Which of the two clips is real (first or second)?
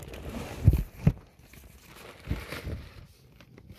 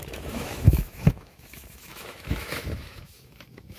first